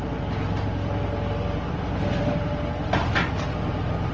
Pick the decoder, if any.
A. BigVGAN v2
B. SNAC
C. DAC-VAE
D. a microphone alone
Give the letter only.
D